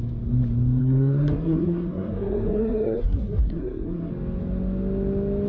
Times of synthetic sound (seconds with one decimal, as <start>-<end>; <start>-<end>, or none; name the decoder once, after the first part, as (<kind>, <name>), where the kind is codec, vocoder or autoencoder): 0.8-4.1 (codec, SNAC)